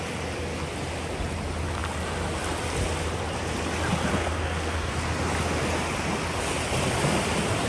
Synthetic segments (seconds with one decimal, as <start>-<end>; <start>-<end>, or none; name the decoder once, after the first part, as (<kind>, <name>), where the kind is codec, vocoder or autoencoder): 4.1-4.9 (codec, SNAC)